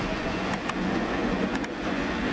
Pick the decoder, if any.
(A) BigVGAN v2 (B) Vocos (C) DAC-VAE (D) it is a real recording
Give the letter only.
B